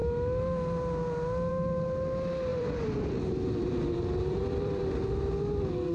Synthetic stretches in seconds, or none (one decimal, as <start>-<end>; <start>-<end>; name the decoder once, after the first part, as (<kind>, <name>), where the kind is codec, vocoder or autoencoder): 2.5-4.9 (vocoder, BigVGAN v2)